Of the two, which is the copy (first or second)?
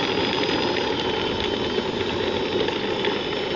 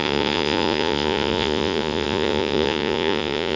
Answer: second